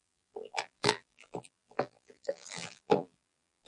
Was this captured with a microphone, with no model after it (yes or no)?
no